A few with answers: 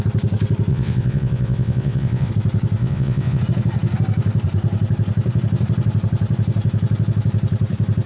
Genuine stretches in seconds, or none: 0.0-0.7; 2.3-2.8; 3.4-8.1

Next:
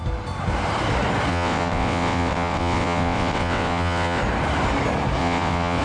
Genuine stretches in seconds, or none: 0.0-1.3; 4.2-5.2

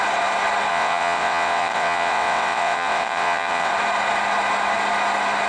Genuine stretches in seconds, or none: 0.0-0.7; 3.7-5.5

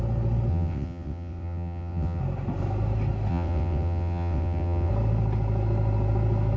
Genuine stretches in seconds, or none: 0.0-0.5; 2.2-3.3; 4.9-6.6

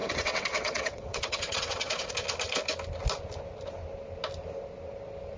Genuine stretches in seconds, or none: 2.1-5.4

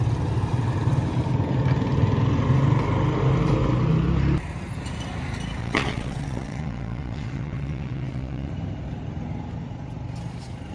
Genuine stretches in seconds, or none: 0.0-5.6; 8.5-10.7